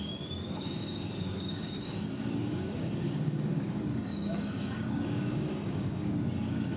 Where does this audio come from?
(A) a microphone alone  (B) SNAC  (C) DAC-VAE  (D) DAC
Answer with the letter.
D